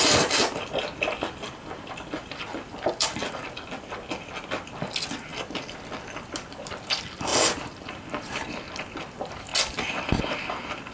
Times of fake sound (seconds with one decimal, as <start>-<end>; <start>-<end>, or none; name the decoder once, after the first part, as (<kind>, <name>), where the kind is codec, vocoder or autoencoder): none